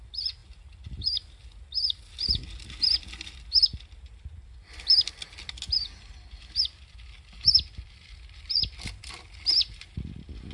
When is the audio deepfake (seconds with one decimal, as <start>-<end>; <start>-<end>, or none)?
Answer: none